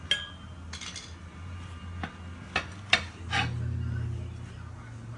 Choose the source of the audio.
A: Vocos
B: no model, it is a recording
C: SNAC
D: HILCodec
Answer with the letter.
B